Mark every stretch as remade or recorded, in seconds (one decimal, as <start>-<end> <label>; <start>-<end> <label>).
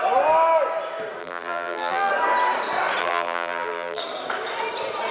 0.0-1.2 recorded; 1.2-2.1 remade; 2.1-3.0 recorded; 3.0-4.0 remade; 4.0-5.1 recorded